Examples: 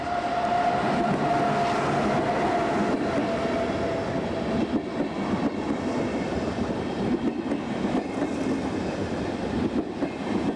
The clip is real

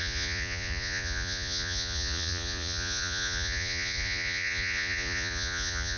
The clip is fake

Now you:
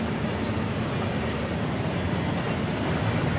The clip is real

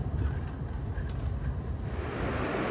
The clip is real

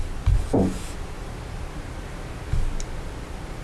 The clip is real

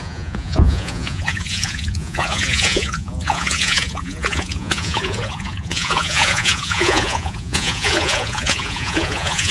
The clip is fake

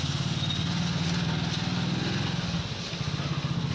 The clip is real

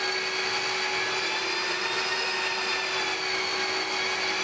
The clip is real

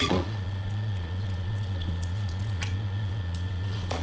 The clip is fake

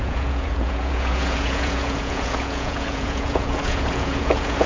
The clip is fake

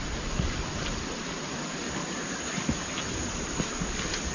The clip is real